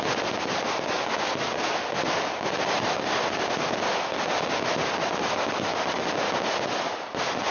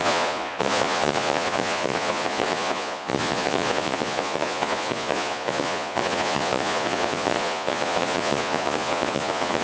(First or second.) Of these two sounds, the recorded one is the first